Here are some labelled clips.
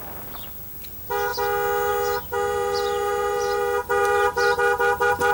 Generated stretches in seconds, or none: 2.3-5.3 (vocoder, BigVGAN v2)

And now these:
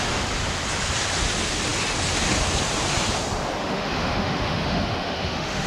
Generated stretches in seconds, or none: 3.6-5.7 (autoencoder, DAC-VAE)

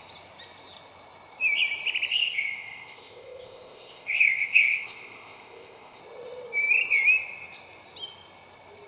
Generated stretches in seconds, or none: 2.1-6.0 (codec, ZipCodec)